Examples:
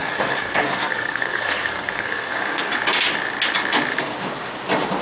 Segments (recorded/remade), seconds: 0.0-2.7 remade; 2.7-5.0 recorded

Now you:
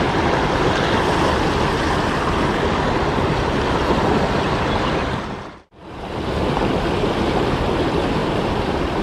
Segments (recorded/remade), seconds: 0.0-9.0 recorded